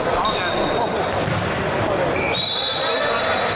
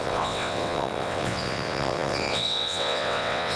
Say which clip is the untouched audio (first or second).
first